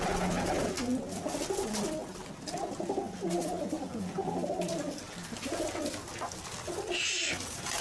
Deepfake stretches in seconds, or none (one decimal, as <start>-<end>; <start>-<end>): 3.9-5.5